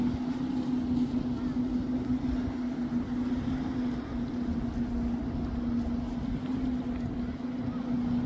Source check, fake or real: real